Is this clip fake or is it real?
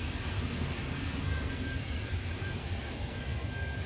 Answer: fake